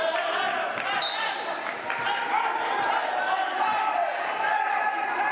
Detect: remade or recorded remade